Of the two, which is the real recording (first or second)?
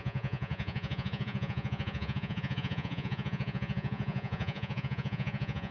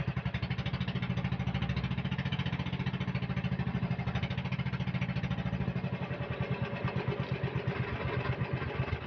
second